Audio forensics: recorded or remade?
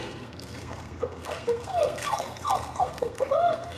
remade